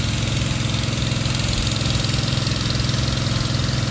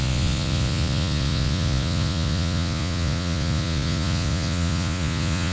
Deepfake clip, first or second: second